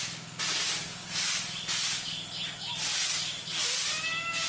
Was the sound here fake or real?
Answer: real